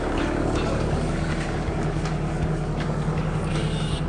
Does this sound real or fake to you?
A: fake